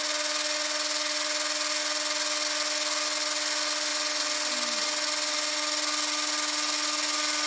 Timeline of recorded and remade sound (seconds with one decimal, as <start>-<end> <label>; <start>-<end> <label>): 0.0-7.5 recorded